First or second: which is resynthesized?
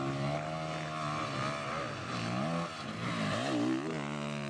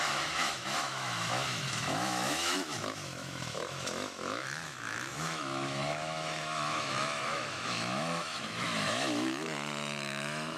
second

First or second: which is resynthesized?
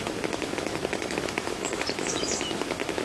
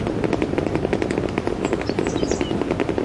first